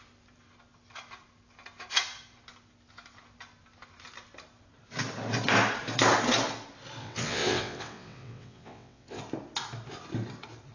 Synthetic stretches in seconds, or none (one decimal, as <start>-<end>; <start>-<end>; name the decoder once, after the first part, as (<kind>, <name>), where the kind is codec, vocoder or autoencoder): 7.0-9.2 (vocoder, WaveNeXt)